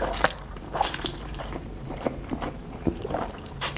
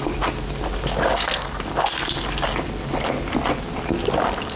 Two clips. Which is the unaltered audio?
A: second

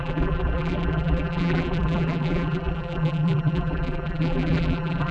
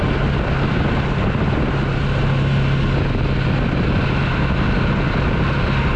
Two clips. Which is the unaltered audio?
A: second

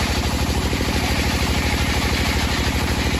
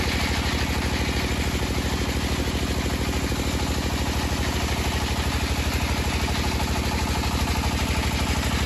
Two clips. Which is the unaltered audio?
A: second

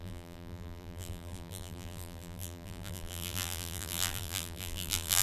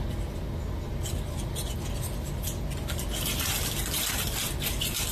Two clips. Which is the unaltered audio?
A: second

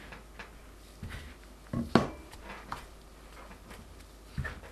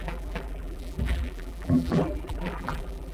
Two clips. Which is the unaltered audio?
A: first